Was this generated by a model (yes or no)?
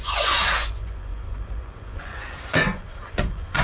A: yes